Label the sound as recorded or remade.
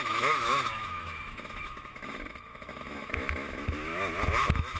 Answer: remade